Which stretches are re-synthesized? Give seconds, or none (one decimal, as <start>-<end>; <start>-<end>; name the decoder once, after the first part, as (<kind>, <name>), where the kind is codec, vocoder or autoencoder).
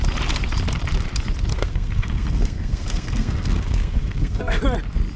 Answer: 1.5-4.6 (codec, SNAC)